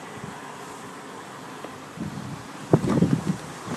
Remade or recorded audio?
recorded